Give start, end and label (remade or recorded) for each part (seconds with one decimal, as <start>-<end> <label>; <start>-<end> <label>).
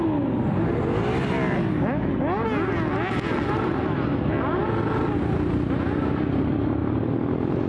0.0-7.7 recorded